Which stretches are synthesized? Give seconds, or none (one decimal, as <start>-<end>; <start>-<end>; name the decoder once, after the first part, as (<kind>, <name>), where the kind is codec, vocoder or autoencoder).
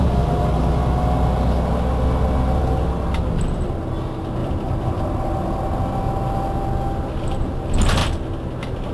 4.4-5.5 (vocoder, BigVGAN v2)